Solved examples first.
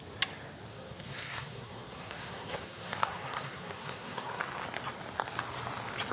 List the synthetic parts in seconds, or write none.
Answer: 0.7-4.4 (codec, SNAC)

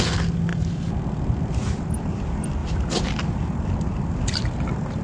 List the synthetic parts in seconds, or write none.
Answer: 0.5-1.4 (vocoder, BigVGAN v2); 2.6-3.7

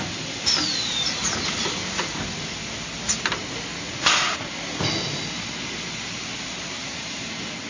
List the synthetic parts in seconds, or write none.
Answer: 3.7-4.5 (vocoder, Vocos)

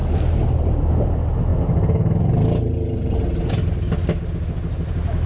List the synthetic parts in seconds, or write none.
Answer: none

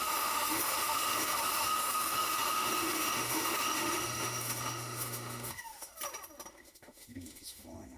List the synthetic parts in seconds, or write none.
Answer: 0.0-5.9 (autoencoder, DAC-VAE); 6.5-8.0

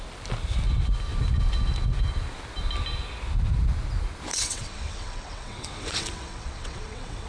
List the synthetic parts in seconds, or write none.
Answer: 4.3-7.3 (vocoder, WaveNeXt)